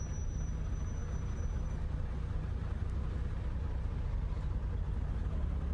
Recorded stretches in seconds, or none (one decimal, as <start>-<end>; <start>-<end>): 0.0-5.7